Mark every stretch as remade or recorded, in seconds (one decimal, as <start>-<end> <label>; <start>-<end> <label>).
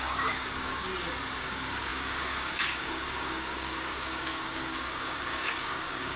0.0-0.9 remade; 0.9-1.4 recorded; 1.4-6.2 remade